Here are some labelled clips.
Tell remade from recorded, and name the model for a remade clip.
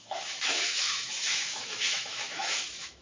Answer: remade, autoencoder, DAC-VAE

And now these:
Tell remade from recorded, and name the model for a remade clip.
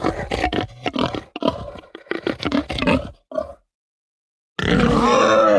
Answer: recorded